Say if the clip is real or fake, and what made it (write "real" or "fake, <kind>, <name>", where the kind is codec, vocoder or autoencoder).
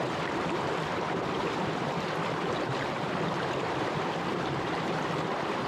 fake, vocoder, BigVGAN v2